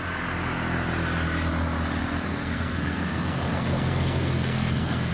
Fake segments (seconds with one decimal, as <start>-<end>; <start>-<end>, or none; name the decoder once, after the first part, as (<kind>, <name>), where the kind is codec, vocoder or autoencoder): 2.0-5.1 (codec, SNAC)